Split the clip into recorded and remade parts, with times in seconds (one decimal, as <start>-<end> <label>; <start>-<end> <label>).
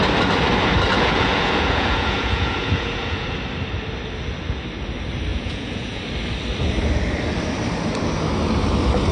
0.0-0.9 recorded; 0.9-3.4 remade; 3.4-5.3 recorded; 5.3-6.0 remade; 6.0-9.1 recorded